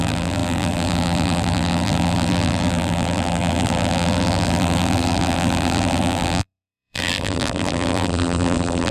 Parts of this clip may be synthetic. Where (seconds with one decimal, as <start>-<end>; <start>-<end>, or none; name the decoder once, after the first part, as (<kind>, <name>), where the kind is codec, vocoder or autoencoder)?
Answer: 0.0-8.9 (vocoder, BigVGAN v2)